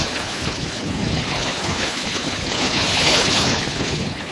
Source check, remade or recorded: remade